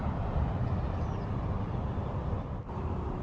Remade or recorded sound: recorded